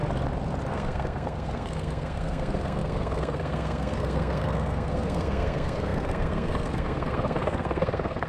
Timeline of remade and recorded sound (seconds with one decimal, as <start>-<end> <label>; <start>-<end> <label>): 0.0-0.7 recorded; 0.7-8.3 remade